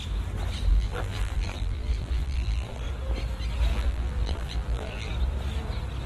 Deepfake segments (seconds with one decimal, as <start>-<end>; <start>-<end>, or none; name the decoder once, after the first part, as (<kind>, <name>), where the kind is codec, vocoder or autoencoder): 0.7-2.8 (vocoder, BigVGAN v2); 3.7-5.1

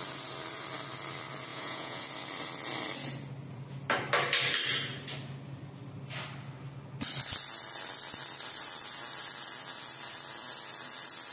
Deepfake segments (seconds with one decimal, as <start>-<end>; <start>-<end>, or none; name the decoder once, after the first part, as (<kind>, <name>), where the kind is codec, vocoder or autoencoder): 1.5-2.1 (vocoder, Vocos)

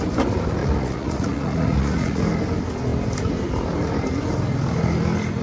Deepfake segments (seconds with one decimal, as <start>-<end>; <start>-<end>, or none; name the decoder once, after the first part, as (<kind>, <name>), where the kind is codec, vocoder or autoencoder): 0.6-2.2 (vocoder, Vocos)

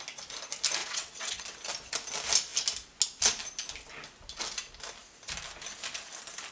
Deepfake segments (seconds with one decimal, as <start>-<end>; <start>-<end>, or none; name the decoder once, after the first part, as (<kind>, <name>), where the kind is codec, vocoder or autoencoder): 0.8-1.4 (vocoder, WaveNeXt)

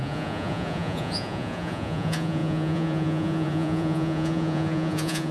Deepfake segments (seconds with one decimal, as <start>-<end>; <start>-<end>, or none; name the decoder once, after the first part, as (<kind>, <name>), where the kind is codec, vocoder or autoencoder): 0.0-5.3 (vocoder, Vocos)

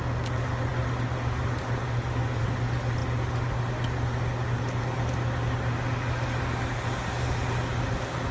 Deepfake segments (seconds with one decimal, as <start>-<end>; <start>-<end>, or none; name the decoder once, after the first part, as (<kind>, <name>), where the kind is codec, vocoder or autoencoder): none

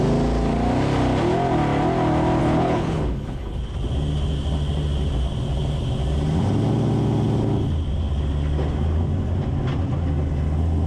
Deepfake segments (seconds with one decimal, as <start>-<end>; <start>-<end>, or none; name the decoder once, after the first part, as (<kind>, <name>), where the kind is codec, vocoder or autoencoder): 2.4-3.6 (codec, HILCodec)